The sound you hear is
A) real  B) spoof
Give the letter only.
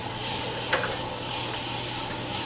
A